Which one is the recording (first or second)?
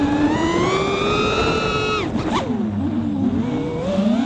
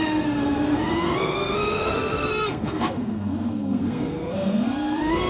first